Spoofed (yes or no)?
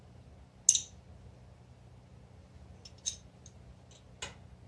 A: no